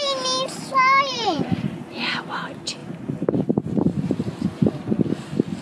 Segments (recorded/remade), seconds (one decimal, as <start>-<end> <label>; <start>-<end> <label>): 0.0-1.1 recorded; 1.1-1.9 remade; 1.9-2.8 recorded; 2.8-4.1 remade; 4.1-5.6 recorded